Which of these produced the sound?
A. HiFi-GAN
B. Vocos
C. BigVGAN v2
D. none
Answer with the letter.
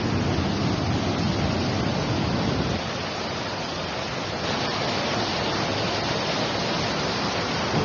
D